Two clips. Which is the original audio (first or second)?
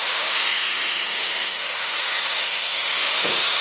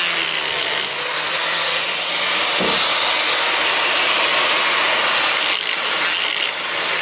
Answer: second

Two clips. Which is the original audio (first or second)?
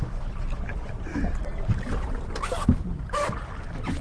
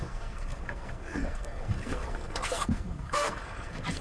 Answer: first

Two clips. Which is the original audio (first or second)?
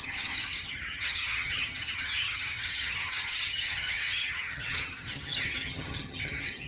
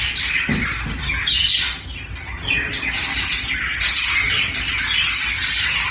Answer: second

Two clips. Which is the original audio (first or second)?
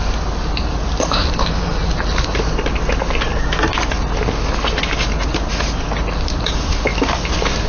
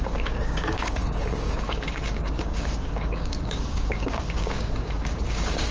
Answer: first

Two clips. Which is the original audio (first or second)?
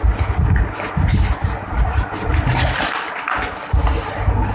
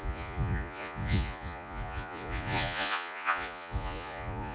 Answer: first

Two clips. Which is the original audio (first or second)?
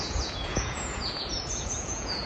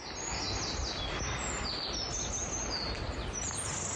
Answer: second